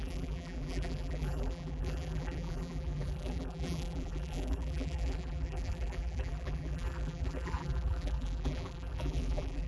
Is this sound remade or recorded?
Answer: remade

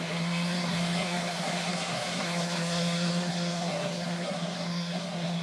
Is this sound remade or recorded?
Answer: remade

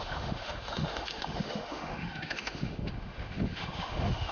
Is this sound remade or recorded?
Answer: remade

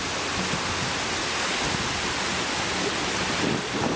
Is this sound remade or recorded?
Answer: recorded